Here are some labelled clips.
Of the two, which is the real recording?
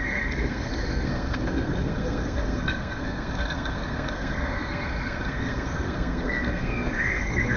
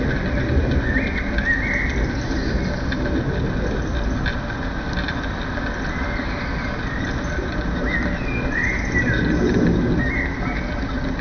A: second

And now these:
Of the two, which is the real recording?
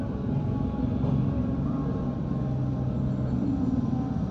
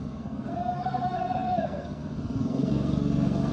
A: first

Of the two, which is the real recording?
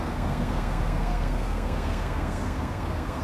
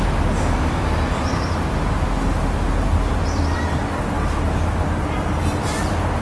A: second